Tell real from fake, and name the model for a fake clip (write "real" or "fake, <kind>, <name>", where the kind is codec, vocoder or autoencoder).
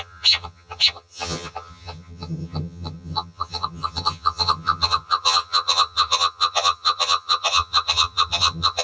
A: fake, vocoder, HiFi-GAN